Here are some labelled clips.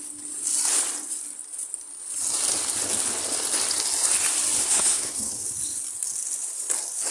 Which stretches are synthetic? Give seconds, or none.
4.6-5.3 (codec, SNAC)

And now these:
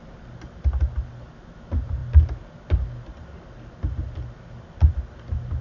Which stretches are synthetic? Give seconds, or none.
none

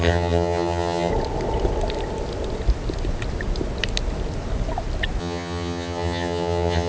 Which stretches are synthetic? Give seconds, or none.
0.0-1.1 (vocoder, HiFi-GAN); 5.2-6.9

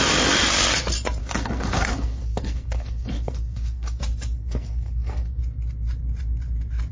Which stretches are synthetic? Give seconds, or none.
1.2-4.0 (codec, SNAC); 4.4-5.4

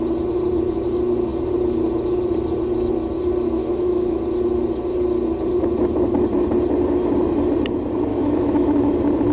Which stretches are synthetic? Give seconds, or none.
3.6-4.2 (autoencoder, DAC-VAE); 8.1-8.8

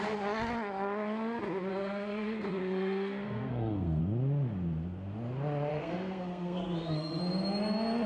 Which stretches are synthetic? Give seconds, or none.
1.7-4.0 (codec, SNAC); 5.7-7.2

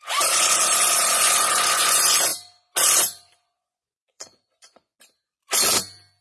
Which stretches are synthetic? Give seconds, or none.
0.0-2.3 (vocoder, Vocos); 3.0-4.9